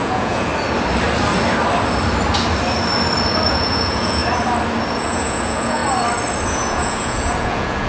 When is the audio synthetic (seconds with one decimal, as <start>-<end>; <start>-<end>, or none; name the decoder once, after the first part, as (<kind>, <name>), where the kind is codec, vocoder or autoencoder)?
0.0-0.5 (vocoder, Vocos); 3.5-4.2; 5.0-5.8; 6.5-7.9